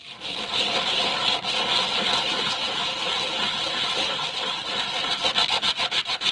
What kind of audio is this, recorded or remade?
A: recorded